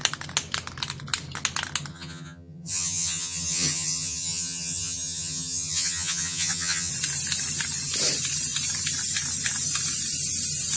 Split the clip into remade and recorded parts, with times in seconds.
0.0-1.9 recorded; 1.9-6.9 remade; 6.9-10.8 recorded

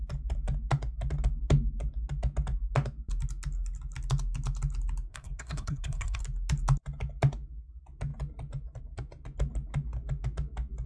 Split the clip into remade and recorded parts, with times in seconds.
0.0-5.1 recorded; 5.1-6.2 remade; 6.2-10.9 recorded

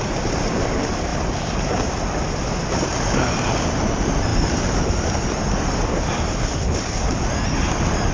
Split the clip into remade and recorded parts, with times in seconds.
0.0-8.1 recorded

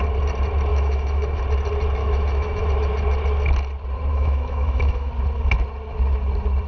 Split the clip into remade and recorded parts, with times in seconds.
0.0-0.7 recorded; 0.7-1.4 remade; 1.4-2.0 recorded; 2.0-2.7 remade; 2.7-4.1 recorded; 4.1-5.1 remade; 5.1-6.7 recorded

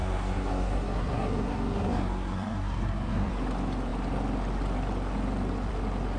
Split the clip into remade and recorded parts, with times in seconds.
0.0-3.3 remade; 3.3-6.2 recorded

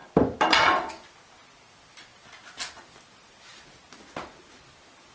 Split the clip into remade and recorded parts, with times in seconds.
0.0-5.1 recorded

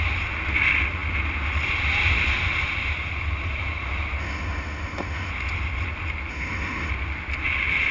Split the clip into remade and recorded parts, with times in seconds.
0.0-4.2 recorded; 4.2-5.3 remade; 5.3-6.3 recorded; 6.3-6.9 remade; 6.9-7.9 recorded

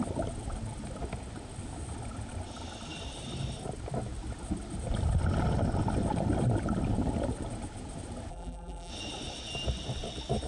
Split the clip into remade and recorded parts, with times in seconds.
0.0-8.3 recorded; 8.3-8.9 remade; 8.9-10.5 recorded